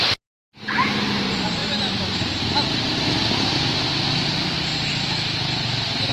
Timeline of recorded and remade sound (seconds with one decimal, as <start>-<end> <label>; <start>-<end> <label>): 0.0-3.2 recorded; 3.2-4.2 remade; 4.2-4.7 recorded; 4.7-6.1 remade